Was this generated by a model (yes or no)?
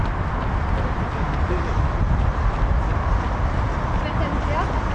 no